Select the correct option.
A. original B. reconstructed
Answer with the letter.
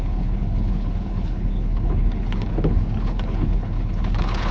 B